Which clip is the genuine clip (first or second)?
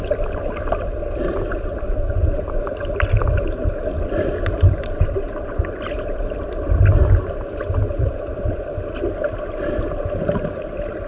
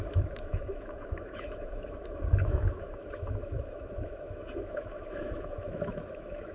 first